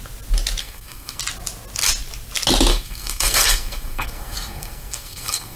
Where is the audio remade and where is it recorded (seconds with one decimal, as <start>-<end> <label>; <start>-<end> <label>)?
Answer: 0.0-0.6 recorded; 0.6-1.2 remade; 1.2-2.7 recorded; 2.7-5.6 remade